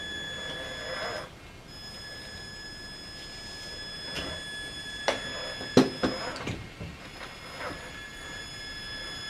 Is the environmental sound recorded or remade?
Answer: recorded